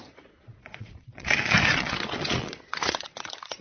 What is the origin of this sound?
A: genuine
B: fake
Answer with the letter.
B